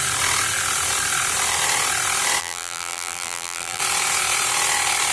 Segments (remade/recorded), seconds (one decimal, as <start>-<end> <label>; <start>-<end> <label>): 0.0-2.4 recorded; 2.4-3.8 remade; 3.8-5.1 recorded